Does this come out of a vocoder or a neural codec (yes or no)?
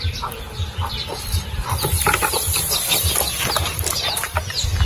no